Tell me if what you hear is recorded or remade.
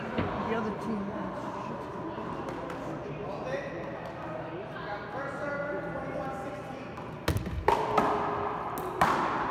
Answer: recorded